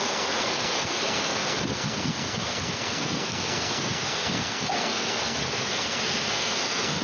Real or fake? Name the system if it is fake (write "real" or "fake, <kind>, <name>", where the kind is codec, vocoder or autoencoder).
fake, codec, SNAC